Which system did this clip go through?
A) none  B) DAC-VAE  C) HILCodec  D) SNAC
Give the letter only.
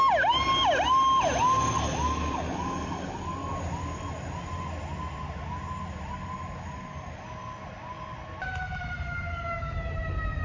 A